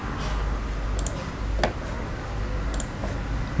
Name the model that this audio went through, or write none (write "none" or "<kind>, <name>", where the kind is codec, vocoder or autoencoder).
none